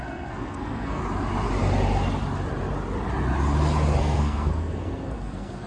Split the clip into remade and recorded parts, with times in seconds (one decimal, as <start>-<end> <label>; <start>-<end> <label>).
0.0-1.0 remade; 1.0-4.0 recorded; 4.0-5.7 remade